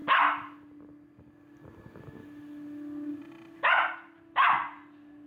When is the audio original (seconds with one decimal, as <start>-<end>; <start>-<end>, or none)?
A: 0.0-5.3